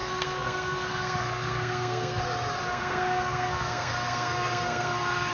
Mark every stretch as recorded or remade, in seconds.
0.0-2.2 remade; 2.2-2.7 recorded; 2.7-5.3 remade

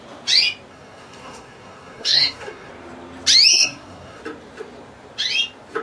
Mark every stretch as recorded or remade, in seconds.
0.0-0.7 recorded; 0.7-2.7 remade; 2.7-3.5 recorded; 3.5-4.2 remade; 4.2-5.8 recorded

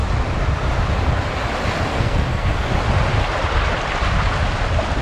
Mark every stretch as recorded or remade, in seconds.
0.0-1.9 recorded; 1.9-2.7 remade; 2.7-5.0 recorded